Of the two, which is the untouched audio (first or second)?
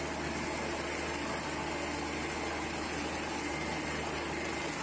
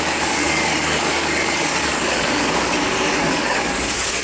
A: first